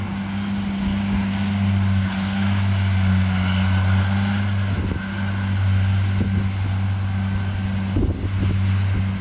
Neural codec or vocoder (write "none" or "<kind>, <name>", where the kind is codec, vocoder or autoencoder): none